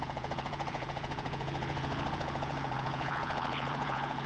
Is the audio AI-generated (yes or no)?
yes